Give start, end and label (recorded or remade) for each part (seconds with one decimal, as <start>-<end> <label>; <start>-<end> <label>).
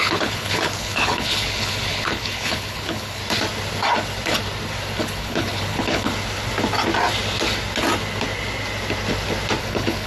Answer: 0.0-3.2 remade; 3.2-5.0 recorded; 5.0-6.1 remade; 6.1-9.6 recorded; 9.6-10.1 remade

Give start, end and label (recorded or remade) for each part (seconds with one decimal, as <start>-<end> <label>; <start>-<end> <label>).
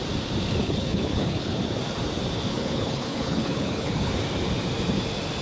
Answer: 0.0-0.6 recorded; 0.6-1.6 remade; 1.6-2.5 recorded; 2.5-4.1 remade; 4.1-5.4 recorded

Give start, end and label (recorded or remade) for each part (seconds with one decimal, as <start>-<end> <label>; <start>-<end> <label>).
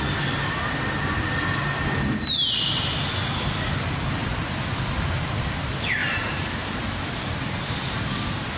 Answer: 0.0-8.6 recorded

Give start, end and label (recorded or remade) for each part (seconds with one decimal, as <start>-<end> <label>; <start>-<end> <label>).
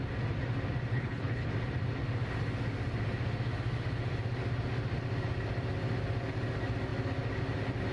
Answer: 0.0-0.9 recorded; 0.9-1.5 remade; 1.5-7.9 recorded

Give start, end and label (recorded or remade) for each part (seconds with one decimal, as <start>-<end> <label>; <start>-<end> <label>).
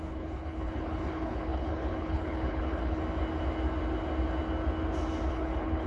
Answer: 0.0-3.0 remade; 3.0-5.3 recorded; 5.3-5.9 remade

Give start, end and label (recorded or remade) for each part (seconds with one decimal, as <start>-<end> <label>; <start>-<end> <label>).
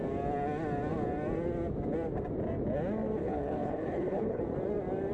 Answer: 0.0-3.2 recorded; 3.2-4.4 remade; 4.4-5.1 recorded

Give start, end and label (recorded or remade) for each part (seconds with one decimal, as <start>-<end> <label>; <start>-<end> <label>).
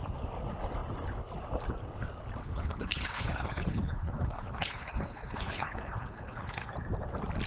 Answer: 0.0-2.4 recorded; 2.4-6.7 remade; 6.7-7.5 recorded